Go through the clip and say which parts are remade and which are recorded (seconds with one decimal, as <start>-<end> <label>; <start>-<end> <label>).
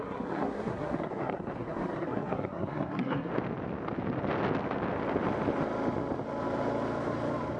0.0-3.3 remade; 3.3-7.6 recorded